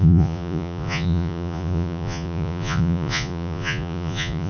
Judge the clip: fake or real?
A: fake